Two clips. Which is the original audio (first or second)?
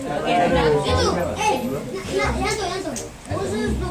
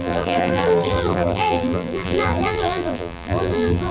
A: first